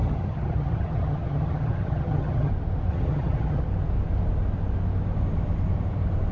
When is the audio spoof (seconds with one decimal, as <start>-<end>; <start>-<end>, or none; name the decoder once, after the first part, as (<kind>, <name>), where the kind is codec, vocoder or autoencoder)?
0.0-2.5 (vocoder, HiFi-GAN); 2.9-3.6